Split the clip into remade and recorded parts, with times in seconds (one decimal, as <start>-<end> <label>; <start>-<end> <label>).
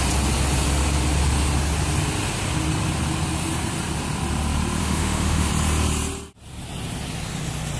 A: 0.0-4.8 recorded; 4.8-5.5 remade; 5.5-7.8 recorded